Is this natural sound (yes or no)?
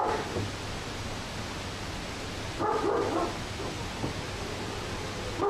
yes